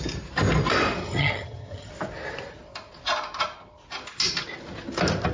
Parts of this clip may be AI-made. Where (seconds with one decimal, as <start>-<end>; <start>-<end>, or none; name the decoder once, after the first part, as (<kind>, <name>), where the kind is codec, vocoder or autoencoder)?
1.0-1.9 (vocoder, HiFi-GAN)